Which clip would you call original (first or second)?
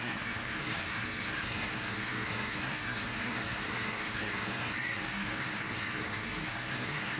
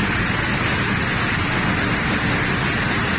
second